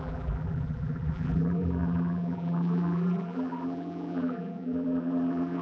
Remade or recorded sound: remade